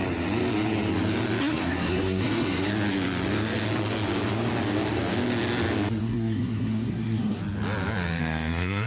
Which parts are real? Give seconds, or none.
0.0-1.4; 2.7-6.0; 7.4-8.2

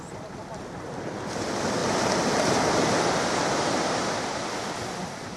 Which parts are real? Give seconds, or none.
0.0-5.4